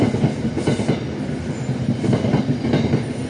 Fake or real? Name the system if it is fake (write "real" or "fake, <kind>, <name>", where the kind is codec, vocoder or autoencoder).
real